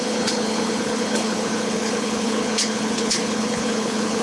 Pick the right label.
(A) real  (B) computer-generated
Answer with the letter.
B